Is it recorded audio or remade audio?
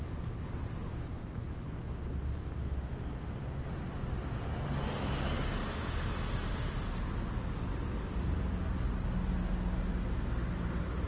recorded